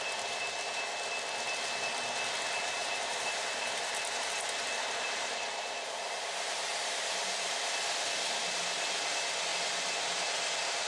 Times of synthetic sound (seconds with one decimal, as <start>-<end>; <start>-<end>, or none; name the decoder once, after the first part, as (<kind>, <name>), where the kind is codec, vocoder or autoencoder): 2.8-7.7 (vocoder, BigVGAN v2)